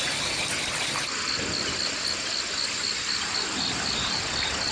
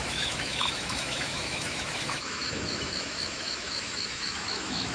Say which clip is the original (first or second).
first